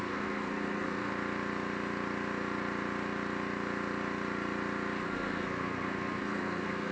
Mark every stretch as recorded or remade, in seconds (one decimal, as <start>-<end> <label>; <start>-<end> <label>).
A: 0.0-1.1 remade; 1.1-5.0 recorded; 5.0-6.9 remade